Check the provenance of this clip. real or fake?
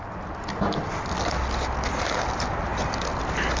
real